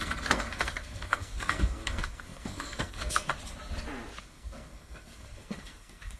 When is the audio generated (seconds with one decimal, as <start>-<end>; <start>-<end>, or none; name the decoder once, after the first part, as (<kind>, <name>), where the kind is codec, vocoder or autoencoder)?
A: 0.0-3.3 (codec, SNAC); 4.2-6.2